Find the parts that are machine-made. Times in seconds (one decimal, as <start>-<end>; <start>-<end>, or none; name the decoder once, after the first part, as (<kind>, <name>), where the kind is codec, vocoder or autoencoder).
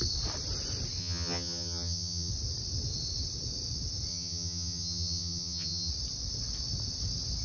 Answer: 1.0-2.3 (vocoder, HiFi-GAN); 4.1-5.9